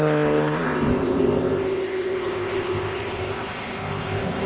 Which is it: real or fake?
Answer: fake